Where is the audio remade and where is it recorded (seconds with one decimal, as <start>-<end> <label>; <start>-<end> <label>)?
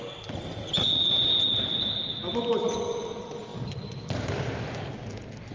0.0-5.5 recorded